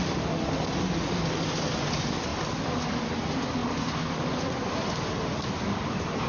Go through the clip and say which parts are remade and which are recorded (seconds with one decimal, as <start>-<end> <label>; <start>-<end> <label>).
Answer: 0.0-6.3 recorded